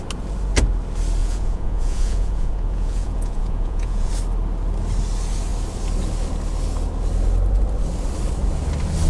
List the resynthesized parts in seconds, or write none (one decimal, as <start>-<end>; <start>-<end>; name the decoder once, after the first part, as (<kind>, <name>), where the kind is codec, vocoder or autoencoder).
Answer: 1.2-4.1 (vocoder, Vocos)